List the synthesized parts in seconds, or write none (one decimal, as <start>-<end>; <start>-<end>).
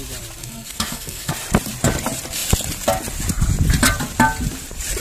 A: 0.4-1.3